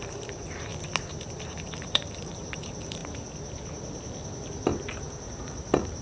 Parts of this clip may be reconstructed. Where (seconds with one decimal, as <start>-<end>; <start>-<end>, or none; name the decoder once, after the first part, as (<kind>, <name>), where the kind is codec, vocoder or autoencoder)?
0.0-0.7 (vocoder, BigVGAN v2); 1.5-3.0; 5.4-6.0